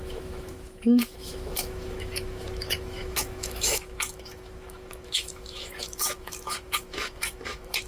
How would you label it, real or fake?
fake